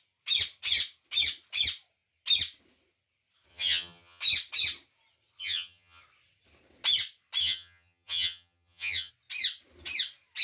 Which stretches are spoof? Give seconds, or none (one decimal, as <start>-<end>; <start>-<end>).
3.5-4.2; 5.4-6.0; 7.4-9.1